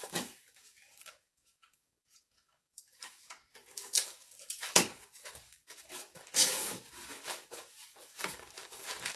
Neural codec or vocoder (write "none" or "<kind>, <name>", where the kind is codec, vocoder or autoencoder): codec, DAC